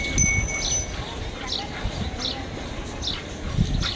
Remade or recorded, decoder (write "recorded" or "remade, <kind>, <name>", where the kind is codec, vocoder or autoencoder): recorded